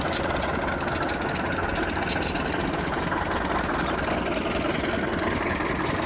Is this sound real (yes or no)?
yes